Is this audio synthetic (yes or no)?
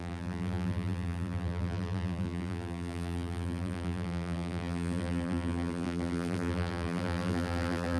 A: yes